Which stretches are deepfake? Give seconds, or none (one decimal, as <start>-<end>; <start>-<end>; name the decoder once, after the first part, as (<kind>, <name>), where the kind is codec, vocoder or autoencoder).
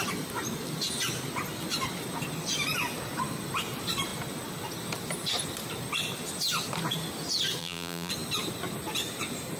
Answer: 7.6-8.1 (vocoder, BigVGAN v2)